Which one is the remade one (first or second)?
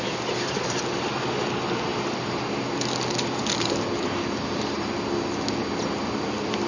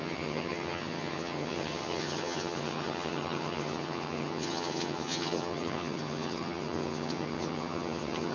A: second